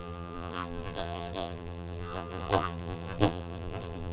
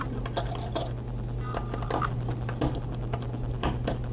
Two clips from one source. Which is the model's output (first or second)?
first